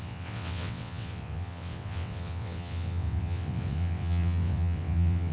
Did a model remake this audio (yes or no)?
yes